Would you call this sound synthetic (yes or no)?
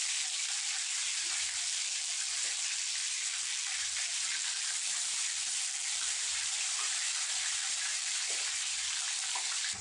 yes